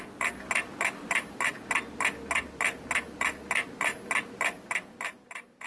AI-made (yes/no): no